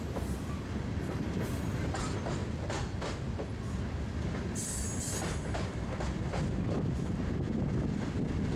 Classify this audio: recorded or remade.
recorded